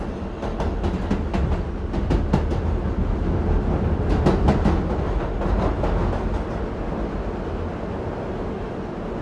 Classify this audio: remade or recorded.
recorded